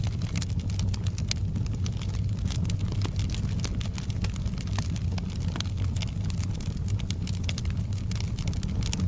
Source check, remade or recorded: recorded